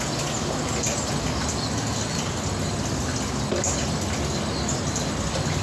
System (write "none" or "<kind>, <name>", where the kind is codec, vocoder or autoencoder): none